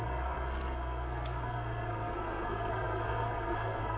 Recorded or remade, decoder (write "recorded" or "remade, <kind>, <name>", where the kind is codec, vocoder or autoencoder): remade, codec, SNAC